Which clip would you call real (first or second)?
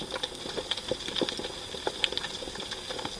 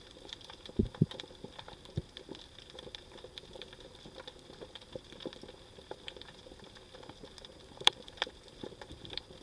first